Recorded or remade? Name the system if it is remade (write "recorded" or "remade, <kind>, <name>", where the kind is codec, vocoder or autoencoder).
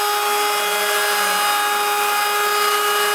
recorded